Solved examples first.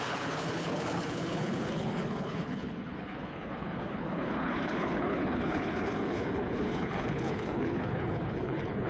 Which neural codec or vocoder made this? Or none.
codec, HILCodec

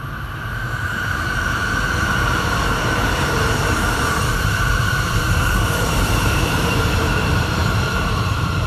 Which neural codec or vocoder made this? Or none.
vocoder, BigVGAN v2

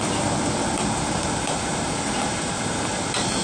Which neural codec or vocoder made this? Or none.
vocoder, BigVGAN v2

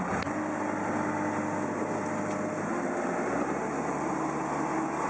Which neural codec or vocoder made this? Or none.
none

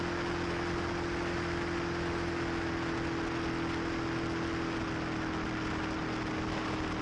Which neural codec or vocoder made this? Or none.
none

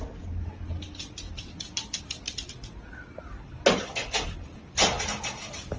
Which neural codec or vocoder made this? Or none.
none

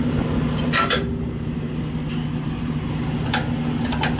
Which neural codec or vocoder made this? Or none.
none